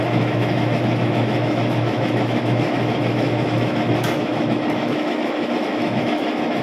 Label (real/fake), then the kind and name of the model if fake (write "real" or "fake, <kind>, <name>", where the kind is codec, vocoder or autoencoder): fake, autoencoder, DAC-VAE